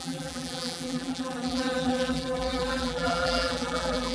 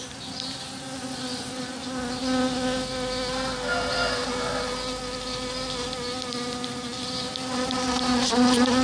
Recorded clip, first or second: second